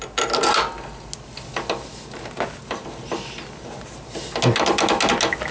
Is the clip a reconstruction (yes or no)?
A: no